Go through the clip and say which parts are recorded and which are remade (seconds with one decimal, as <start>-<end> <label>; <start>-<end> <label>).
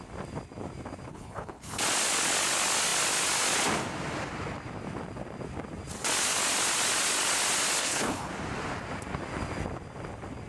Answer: 0.0-1.1 recorded; 1.1-1.8 remade; 1.8-7.8 recorded; 7.8-8.3 remade; 8.3-10.5 recorded